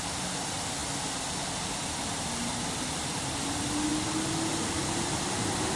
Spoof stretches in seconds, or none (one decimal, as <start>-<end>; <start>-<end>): none